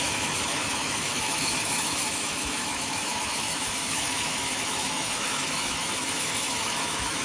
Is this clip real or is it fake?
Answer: fake